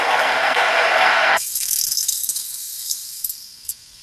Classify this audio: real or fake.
fake